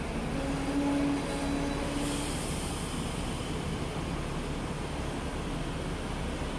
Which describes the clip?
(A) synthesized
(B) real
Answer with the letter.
B